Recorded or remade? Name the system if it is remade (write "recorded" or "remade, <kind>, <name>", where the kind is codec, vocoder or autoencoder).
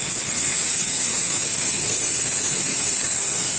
remade, codec, SNAC